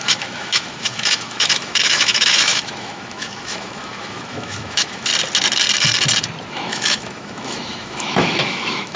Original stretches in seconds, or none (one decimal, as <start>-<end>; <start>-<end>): 5.1-6.5